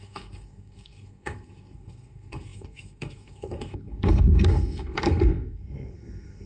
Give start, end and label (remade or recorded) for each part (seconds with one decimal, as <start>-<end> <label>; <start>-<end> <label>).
0.0-6.5 remade